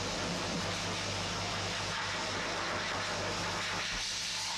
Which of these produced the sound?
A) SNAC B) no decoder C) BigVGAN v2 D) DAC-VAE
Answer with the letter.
C